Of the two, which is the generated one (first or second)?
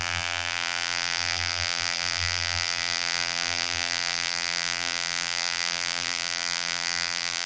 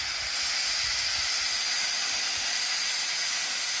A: first